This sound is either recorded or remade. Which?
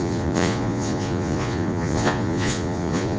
remade